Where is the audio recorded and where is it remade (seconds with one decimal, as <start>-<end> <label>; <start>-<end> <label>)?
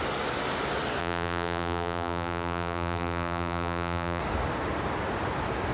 0.0-1.0 recorded; 1.0-4.2 remade; 4.2-5.7 recorded